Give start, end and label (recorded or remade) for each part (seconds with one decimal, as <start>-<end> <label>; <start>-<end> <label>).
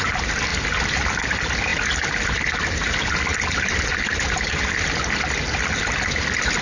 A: 0.0-6.6 recorded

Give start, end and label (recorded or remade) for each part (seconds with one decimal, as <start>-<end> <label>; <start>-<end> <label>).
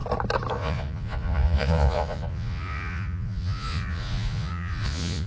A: 0.0-0.5 recorded; 0.5-5.3 remade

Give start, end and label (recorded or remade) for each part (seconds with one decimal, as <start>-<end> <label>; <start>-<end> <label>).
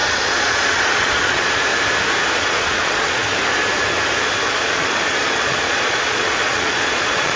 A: 0.0-1.7 remade; 1.7-2.3 recorded; 2.3-3.2 remade; 3.2-4.5 recorded; 4.5-7.4 remade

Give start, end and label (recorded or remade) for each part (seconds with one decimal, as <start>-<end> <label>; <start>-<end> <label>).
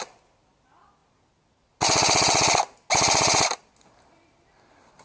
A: 0.0-5.0 recorded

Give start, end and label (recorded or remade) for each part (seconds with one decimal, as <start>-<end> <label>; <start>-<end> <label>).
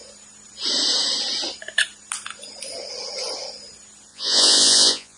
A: 0.0-4.1 recorded; 4.1-5.2 remade